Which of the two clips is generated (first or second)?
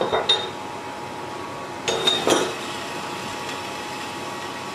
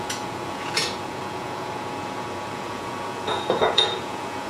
second